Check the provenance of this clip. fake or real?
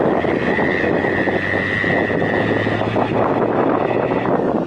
real